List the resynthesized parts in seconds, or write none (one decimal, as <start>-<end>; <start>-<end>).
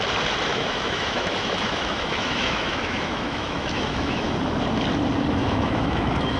0.5-4.3; 5.4-6.4